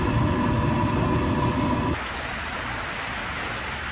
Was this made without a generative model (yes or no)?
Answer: yes